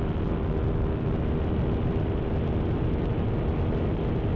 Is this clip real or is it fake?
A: real